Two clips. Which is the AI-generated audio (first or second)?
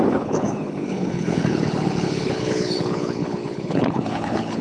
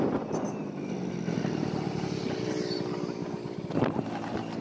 first